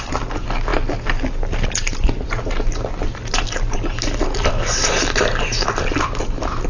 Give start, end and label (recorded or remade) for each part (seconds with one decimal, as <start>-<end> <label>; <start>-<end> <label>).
0.0-6.7 recorded